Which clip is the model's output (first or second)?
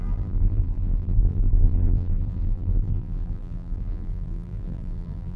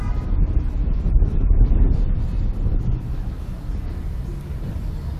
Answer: first